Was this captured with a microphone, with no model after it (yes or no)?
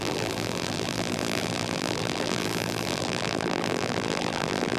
no